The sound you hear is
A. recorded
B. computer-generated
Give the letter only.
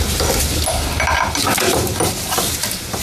A